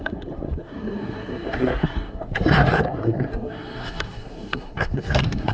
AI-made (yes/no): yes